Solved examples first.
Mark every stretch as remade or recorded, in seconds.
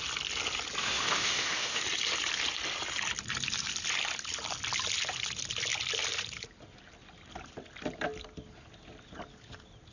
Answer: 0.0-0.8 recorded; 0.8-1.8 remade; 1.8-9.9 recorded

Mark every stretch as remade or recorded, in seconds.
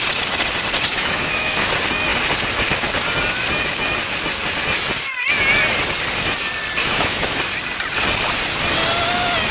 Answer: 0.0-0.9 recorded; 0.9-1.7 remade; 1.7-6.8 recorded; 6.8-7.4 remade; 7.4-9.5 recorded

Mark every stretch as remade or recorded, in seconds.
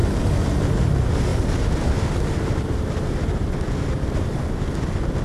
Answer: 0.0-5.2 recorded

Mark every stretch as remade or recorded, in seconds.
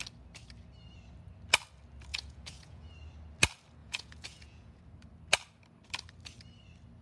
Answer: 0.0-2.1 recorded; 2.1-2.9 remade; 2.9-3.8 recorded; 3.8-4.8 remade; 4.8-7.0 recorded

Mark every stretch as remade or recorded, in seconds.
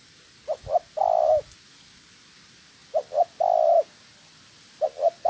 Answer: 0.0-1.0 remade; 1.0-1.5 recorded; 1.5-5.3 remade